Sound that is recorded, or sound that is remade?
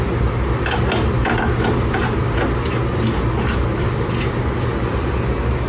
recorded